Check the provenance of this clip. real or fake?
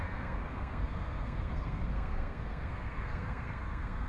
fake